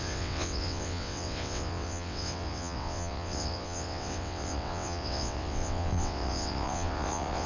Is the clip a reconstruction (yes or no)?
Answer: yes